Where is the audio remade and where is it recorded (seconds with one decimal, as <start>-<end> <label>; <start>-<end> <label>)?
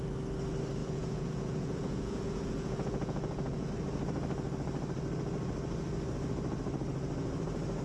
0.0-0.8 recorded; 0.8-3.7 remade; 3.7-7.8 recorded